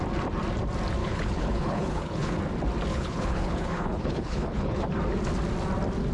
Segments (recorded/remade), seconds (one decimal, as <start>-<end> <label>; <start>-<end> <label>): 0.0-1.0 recorded; 1.0-2.4 remade; 2.4-2.9 recorded; 2.9-4.9 remade; 4.9-6.1 recorded